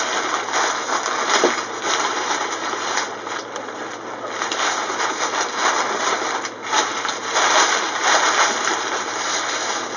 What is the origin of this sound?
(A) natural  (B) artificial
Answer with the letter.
A